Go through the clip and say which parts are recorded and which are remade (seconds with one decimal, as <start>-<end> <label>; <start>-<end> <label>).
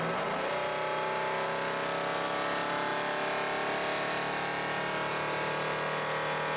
0.0-6.6 recorded